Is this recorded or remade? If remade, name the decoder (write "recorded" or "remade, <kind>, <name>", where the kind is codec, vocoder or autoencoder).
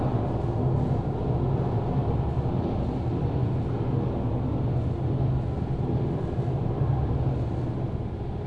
recorded